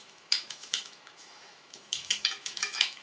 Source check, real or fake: fake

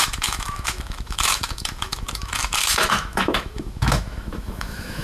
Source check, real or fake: fake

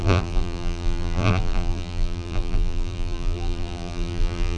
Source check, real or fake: fake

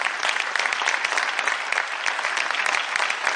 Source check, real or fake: real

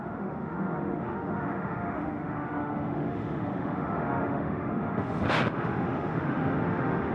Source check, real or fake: fake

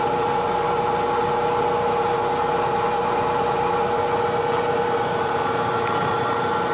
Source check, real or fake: real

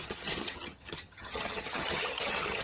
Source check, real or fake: fake